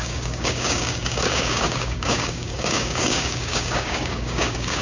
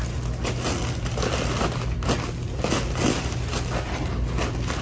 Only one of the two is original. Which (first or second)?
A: second